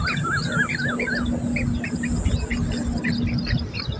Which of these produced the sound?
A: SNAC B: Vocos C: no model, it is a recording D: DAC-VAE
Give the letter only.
C